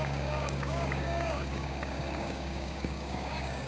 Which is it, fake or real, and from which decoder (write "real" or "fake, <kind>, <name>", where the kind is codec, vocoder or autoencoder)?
fake, codec, DAC